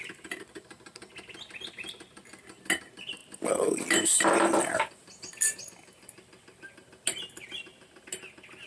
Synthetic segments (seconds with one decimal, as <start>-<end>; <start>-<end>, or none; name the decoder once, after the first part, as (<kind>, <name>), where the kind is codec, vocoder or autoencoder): none